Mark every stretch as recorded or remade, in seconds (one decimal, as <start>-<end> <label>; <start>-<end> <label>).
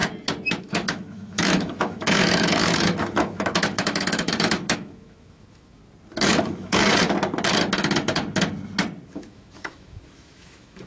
0.0-0.6 recorded; 0.6-5.8 remade; 5.8-6.3 recorded; 6.3-6.8 remade; 6.8-9.1 recorded; 9.1-10.9 remade